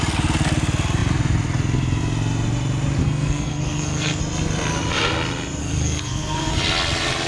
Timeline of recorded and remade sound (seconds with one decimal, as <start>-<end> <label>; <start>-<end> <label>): 0.0-3.0 recorded; 3.0-4.2 remade; 4.2-5.6 recorded; 5.6-6.5 remade; 6.5-7.3 recorded